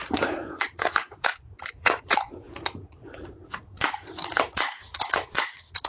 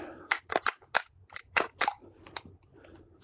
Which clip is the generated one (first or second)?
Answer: first